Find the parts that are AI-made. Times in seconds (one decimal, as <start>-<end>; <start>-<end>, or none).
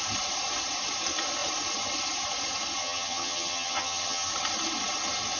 2.8-4.3